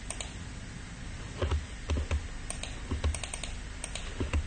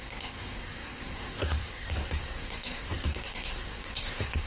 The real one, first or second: first